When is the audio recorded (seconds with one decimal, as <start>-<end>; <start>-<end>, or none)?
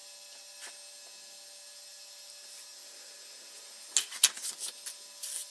0.0-5.5